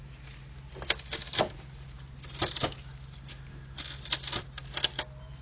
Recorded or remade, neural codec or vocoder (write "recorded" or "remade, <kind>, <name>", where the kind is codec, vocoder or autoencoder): recorded